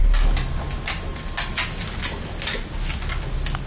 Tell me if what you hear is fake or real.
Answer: real